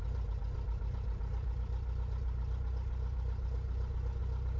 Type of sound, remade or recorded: recorded